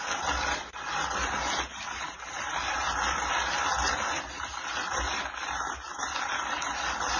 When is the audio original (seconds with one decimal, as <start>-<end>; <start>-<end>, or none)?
0.0-7.2